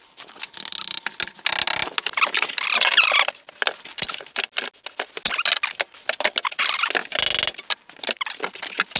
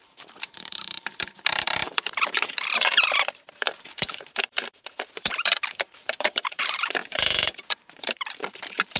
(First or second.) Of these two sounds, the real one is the first